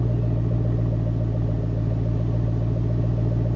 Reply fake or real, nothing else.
real